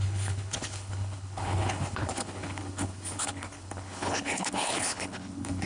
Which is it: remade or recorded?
remade